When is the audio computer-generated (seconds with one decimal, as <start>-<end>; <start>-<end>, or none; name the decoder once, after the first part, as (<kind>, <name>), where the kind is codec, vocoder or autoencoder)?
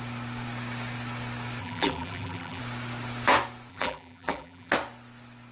1.6-2.6 (vocoder, BigVGAN v2); 3.7-4.7